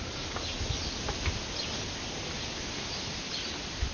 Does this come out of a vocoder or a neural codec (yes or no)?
no